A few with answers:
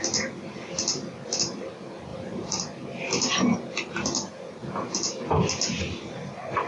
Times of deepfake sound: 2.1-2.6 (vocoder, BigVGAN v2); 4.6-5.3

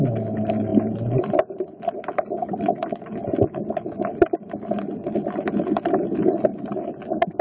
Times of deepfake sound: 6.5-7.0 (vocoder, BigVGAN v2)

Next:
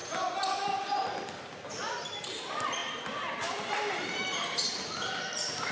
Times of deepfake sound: 1.3-5.7 (vocoder, BigVGAN v2)

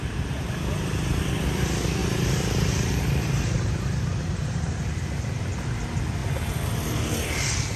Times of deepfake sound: 2.0-4.9 (vocoder, BigVGAN v2)

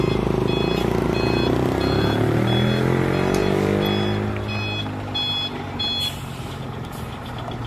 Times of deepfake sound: none

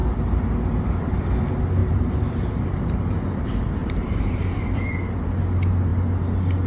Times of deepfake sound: 1.8-2.6 (vocoder, BigVGAN v2); 3.8-4.6

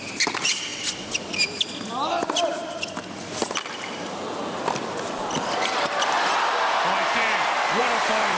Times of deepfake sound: 0.0-0.7 (vocoder, BigVGAN v2); 1.9-3.4; 7.8-8.4

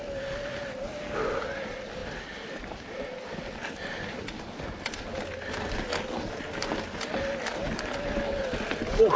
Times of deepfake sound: none